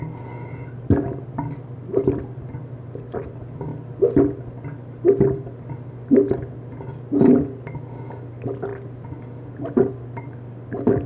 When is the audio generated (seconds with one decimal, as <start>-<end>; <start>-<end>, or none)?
none